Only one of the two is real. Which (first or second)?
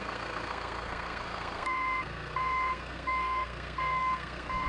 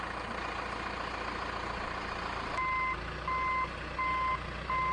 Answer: second